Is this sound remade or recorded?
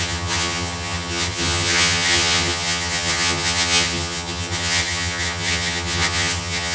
remade